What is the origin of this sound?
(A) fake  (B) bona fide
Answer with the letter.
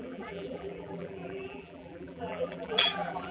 A